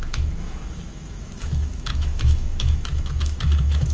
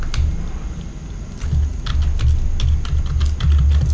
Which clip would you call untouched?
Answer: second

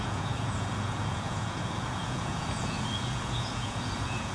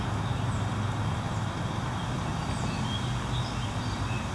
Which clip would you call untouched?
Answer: second